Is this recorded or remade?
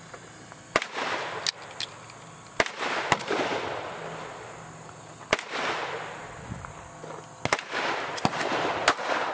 recorded